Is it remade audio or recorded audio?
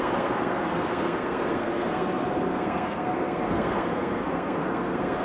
remade